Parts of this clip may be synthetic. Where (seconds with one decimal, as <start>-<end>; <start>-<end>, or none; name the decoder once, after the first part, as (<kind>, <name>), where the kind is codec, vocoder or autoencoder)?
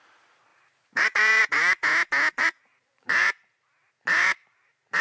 0.0-1.9 (vocoder, Vocos); 2.4-5.0